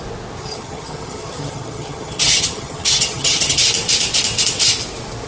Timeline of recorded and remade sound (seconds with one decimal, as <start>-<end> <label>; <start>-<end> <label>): 0.0-0.4 recorded; 0.4-3.6 remade; 3.6-5.3 recorded

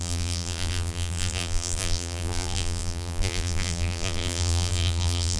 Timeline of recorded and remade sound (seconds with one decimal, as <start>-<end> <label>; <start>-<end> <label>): 0.0-5.4 remade

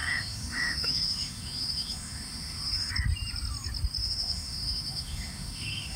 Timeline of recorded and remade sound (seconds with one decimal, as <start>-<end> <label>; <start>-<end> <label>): 0.0-2.9 remade; 2.9-4.0 recorded; 4.0-6.0 remade

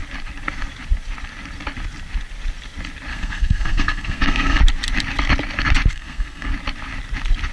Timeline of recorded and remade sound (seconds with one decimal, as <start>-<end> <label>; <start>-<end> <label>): 0.0-3.1 recorded; 3.1-4.6 remade; 4.6-5.9 recorded; 5.9-6.5 remade; 6.5-7.5 recorded

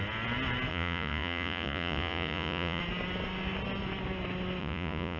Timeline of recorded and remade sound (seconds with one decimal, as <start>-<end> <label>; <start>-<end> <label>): 0.0-0.7 recorded; 0.7-2.8 remade; 2.8-4.6 recorded; 4.6-5.2 remade

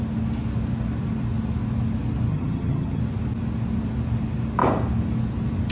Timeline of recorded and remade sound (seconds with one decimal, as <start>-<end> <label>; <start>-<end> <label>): 0.0-2.3 recorded; 2.3-3.0 remade; 3.0-5.7 recorded